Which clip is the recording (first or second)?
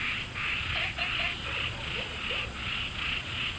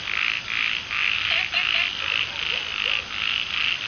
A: second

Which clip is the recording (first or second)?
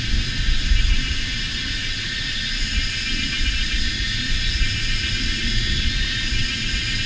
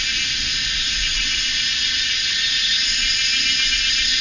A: second